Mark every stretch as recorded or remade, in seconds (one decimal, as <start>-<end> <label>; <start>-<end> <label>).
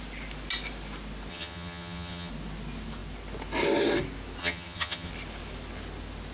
0.0-1.3 recorded; 1.3-2.3 remade; 2.3-4.4 recorded; 4.4-5.1 remade; 5.1-6.3 recorded